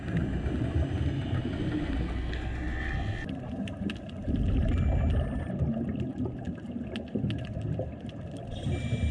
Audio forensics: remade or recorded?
recorded